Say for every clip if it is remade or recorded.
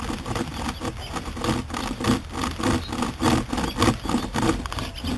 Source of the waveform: recorded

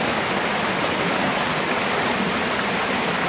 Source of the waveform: recorded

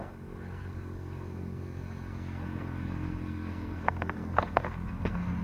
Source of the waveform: remade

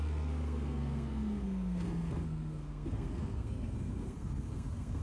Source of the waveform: remade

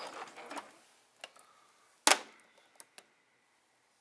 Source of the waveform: recorded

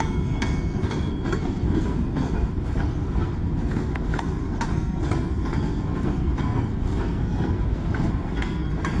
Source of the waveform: remade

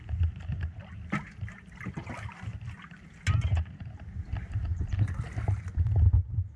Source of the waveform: recorded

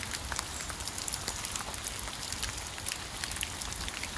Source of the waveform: recorded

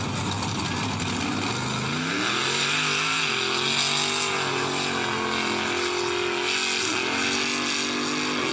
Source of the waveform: recorded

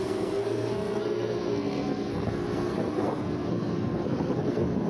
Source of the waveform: remade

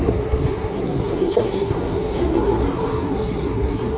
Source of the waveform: remade